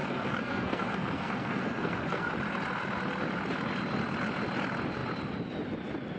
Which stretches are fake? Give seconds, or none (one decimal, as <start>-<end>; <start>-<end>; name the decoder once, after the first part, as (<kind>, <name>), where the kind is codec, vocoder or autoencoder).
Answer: 0.0-2.3 (codec, SNAC)